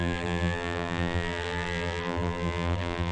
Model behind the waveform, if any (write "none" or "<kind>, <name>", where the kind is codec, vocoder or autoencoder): vocoder, BigVGAN v2